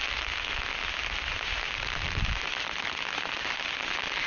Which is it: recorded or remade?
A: recorded